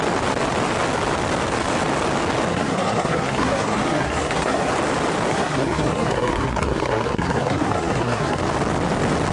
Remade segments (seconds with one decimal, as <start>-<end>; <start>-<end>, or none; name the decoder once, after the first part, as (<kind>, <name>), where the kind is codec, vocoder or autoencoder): 2.5-4.7 (codec, SNAC); 5.3-8.4